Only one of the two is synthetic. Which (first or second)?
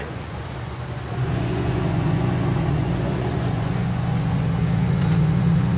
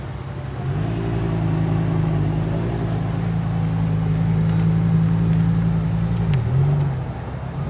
first